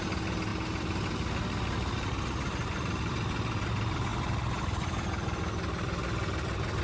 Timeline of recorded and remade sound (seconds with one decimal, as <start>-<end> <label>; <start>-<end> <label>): 0.0-2.6 recorded; 2.6-3.2 remade; 3.2-6.8 recorded